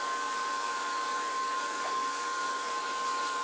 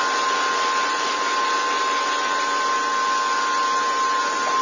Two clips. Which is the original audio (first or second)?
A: second